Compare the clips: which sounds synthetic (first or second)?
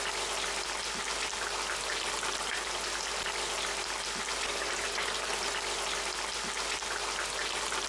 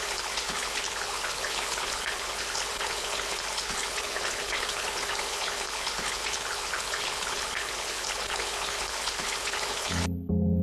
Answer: second